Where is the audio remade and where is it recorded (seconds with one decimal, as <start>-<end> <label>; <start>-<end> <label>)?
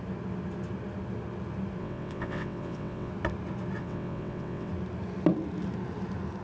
0.0-1.8 recorded; 1.8-3.1 remade; 3.1-3.8 recorded; 3.8-4.7 remade; 4.7-6.4 recorded